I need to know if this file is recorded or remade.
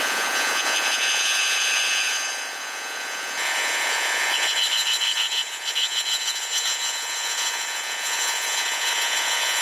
remade